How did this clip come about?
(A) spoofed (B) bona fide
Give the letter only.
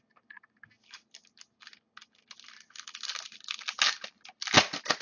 B